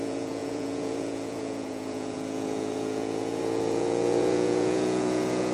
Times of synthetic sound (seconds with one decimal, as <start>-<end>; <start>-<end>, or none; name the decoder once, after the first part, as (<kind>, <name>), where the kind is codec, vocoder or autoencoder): 0.0-5.5 (vocoder, Vocos)